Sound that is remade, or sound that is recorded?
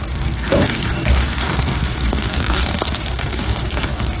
remade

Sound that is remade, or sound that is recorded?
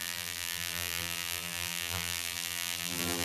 remade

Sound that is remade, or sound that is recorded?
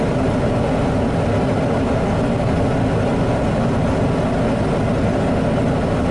recorded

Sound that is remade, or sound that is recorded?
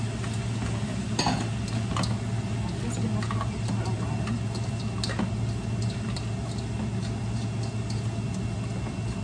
recorded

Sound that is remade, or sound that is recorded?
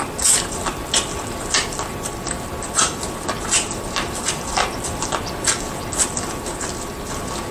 recorded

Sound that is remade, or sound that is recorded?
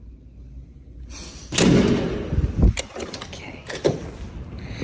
recorded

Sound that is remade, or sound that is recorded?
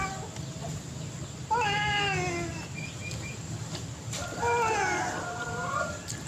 recorded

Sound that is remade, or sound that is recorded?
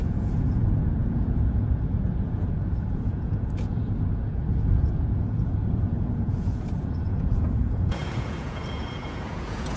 remade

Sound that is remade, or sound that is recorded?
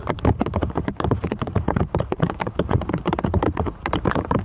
remade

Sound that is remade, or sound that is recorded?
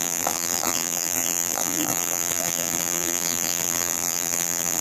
remade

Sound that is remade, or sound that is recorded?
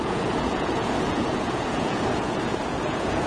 remade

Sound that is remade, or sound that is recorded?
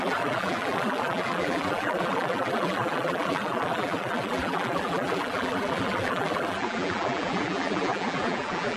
remade